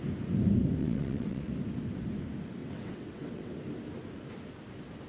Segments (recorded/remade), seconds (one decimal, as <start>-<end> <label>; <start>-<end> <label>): 0.0-0.8 recorded; 0.8-1.5 remade; 1.5-2.6 recorded; 2.6-3.5 remade; 3.5-5.1 recorded